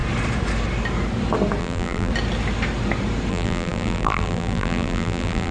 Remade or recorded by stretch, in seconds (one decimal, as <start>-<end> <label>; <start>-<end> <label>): 0.0-1.6 recorded; 1.6-2.1 remade; 2.1-3.3 recorded; 3.3-5.5 remade